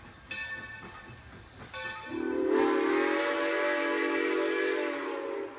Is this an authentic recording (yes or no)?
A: yes